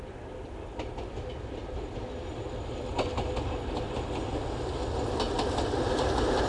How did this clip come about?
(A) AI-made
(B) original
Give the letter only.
B